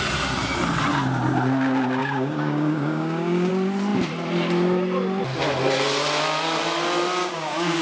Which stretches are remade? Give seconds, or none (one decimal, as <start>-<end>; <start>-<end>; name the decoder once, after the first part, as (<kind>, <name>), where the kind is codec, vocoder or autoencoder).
2.0-3.5 (codec, DAC); 7.2-7.8